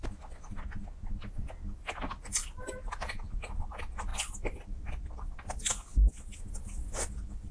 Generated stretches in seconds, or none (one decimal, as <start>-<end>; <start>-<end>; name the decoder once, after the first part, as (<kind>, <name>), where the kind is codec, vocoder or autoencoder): none